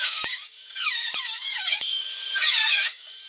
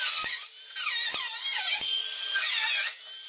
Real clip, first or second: second